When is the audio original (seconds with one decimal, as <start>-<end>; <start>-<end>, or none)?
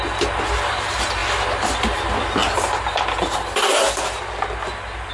0.0-5.1